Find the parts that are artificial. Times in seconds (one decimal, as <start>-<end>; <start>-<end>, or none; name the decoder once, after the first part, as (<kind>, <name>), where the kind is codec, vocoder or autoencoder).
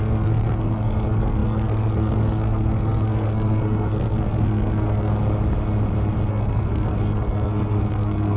0.0-5.1 (codec, SNAC); 6.3-8.4